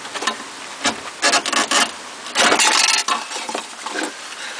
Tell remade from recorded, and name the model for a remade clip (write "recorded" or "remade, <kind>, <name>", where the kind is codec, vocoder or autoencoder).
recorded